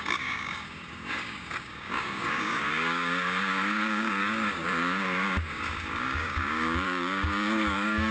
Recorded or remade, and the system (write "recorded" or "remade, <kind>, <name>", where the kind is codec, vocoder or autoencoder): remade, codec, DAC